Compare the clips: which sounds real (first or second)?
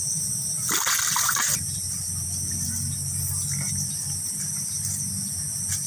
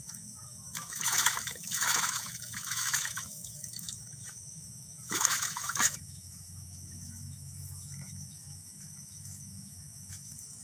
first